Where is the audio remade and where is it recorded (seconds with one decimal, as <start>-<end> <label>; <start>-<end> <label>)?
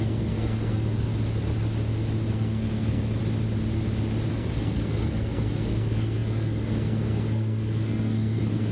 0.0-1.1 remade; 1.1-2.3 recorded; 2.3-3.2 remade; 3.2-4.3 recorded; 4.3-8.7 remade